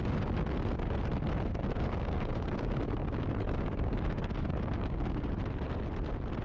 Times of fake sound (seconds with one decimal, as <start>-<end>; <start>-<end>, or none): 1.5-5.3